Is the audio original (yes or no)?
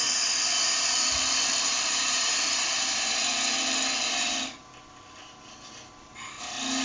yes